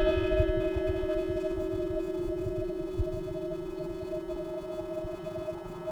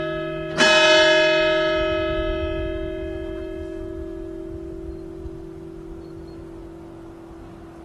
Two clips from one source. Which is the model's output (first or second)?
first